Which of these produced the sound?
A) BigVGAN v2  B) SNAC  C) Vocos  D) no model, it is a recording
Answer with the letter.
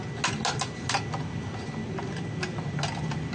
D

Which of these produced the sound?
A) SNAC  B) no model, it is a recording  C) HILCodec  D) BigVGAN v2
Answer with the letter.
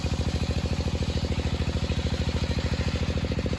B